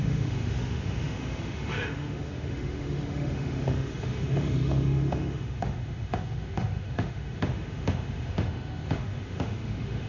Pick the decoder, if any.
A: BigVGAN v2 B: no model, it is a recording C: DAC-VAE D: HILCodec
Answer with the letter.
C